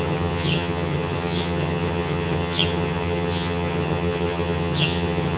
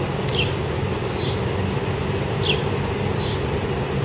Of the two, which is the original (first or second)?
second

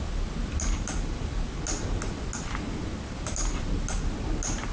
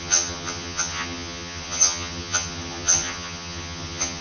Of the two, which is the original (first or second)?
first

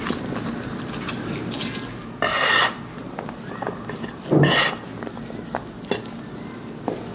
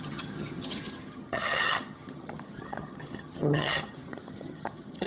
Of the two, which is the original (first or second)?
first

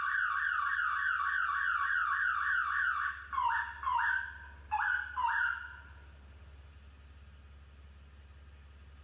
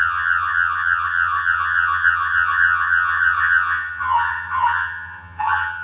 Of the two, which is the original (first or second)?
first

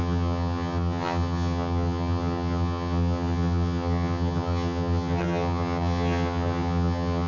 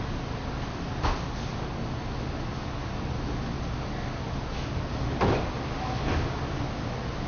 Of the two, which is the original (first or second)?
second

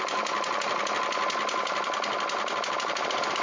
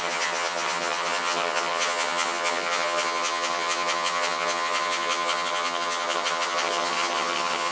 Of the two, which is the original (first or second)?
first